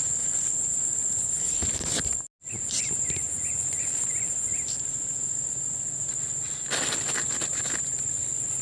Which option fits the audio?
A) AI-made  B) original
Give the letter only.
B